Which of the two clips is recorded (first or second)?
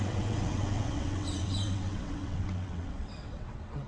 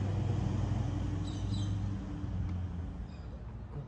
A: second